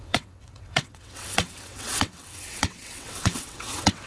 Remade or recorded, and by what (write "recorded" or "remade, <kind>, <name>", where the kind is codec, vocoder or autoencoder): remade, vocoder, WaveNeXt